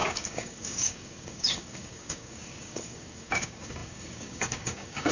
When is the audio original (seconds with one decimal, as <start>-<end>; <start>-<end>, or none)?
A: none